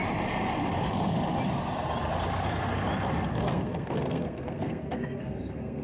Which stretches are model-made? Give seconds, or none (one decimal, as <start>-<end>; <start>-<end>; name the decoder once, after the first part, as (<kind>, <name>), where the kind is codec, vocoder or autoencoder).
3.5-5.8 (codec, SNAC)